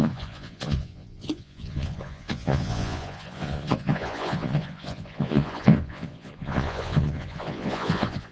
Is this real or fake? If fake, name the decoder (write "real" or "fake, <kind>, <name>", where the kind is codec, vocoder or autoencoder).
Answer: fake, vocoder, Vocos